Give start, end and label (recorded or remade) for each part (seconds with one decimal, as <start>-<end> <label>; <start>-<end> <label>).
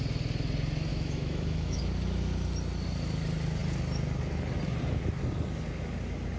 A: 0.0-0.9 recorded; 0.9-1.8 remade; 1.8-6.4 recorded